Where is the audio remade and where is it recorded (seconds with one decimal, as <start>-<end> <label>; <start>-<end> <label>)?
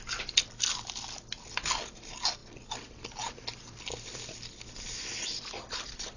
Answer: 0.0-2.4 recorded; 2.4-6.2 remade